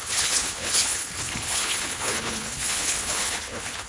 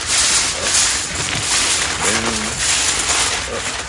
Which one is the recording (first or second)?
second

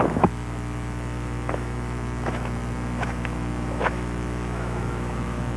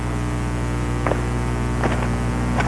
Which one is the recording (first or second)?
second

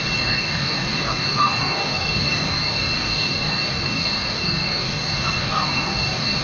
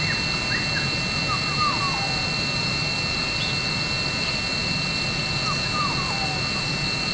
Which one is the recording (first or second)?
second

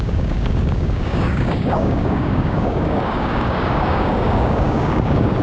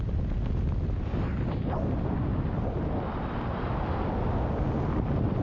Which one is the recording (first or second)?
second